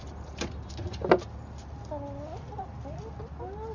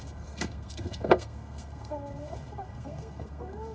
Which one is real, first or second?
first